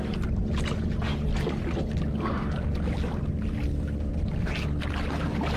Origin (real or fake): real